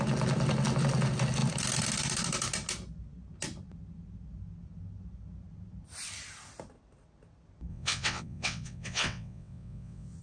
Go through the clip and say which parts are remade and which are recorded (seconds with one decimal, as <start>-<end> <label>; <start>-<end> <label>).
0.0-7.7 recorded; 7.7-10.2 remade